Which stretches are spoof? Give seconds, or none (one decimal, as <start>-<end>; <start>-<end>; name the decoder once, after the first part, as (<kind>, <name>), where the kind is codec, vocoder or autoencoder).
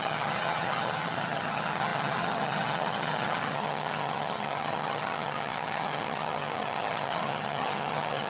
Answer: 0.0-8.3 (vocoder, HiFi-GAN)